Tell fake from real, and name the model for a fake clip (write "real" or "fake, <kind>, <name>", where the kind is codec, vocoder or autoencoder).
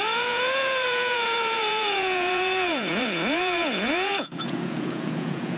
fake, vocoder, Vocos